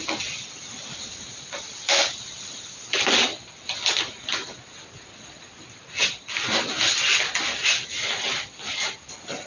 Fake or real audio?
real